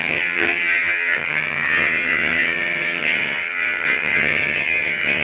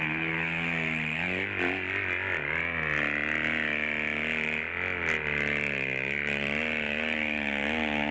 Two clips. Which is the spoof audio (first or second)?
first